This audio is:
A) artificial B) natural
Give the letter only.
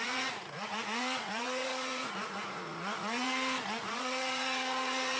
A